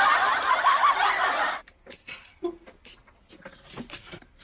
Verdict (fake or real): fake